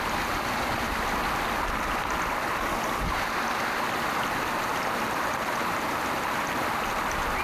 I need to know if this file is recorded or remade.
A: recorded